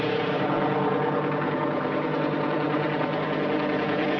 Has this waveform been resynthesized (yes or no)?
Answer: no